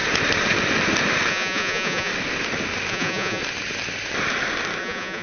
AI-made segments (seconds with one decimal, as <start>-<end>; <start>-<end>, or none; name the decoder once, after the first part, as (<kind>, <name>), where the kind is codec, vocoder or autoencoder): 1.3-2.1 (vocoder, Vocos); 2.9-3.4; 4.8-5.2